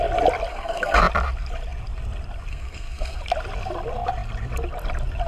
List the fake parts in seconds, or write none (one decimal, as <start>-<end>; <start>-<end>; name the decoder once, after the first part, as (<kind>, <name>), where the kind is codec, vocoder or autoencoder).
0.5-1.0 (codec, SNAC); 2.5-3.2